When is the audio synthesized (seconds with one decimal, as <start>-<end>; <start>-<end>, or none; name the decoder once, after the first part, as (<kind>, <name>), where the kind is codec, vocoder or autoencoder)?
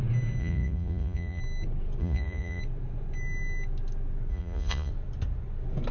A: 0.4-1.4 (vocoder, Vocos); 2.0-2.6; 4.3-4.9